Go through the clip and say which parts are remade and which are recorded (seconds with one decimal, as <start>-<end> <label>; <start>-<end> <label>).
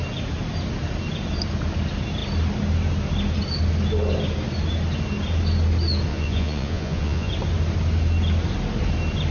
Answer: 0.0-6.1 recorded; 6.1-7.3 remade; 7.3-9.3 recorded